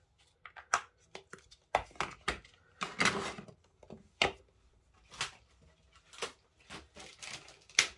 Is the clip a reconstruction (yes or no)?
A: no